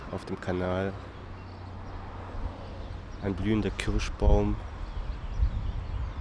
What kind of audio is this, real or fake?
real